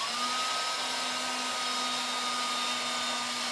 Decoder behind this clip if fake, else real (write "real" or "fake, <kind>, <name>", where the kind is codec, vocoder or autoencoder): real